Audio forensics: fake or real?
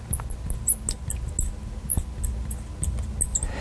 real